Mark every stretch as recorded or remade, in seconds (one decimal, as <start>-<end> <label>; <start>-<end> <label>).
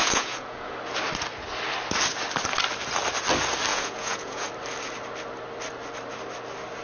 0.0-0.7 remade; 0.7-3.7 recorded; 3.7-4.5 remade; 4.5-6.8 recorded